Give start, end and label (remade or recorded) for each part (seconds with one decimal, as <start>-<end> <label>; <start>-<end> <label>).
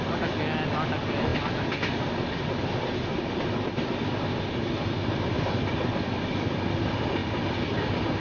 0.0-8.2 recorded